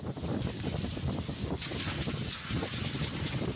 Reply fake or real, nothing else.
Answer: real